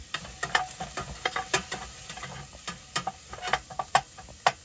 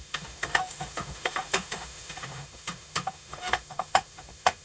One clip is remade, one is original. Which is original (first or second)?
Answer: first